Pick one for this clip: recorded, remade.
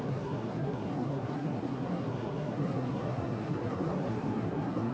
remade